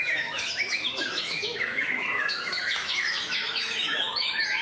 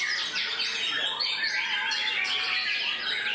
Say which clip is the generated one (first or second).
first